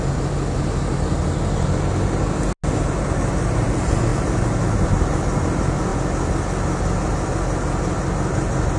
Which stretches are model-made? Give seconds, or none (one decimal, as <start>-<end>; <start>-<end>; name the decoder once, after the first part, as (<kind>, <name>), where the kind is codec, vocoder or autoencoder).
none